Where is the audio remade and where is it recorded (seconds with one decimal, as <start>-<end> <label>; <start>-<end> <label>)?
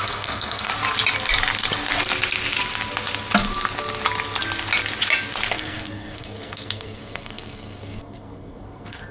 0.0-0.7 remade; 0.7-5.5 recorded; 5.5-9.1 remade